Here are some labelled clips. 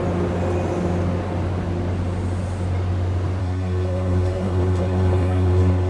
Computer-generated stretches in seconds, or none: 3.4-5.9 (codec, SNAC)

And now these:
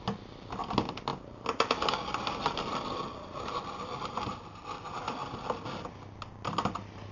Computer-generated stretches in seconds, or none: none

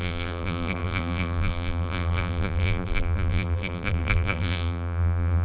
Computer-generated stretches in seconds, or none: 0.0-5.4 (vocoder, BigVGAN v2)

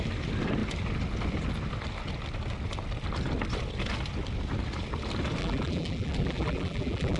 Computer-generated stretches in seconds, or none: 5.4-7.2 (vocoder, BigVGAN v2)

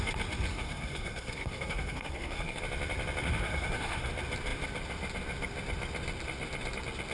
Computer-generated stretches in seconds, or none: 0.5-2.6 (codec, SNAC); 3.4-4.1